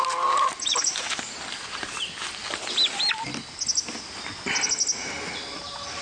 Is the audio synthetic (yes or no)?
no